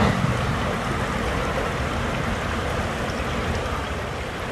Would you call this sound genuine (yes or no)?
yes